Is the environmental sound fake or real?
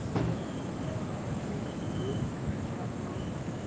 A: fake